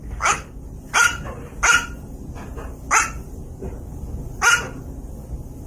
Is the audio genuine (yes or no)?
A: yes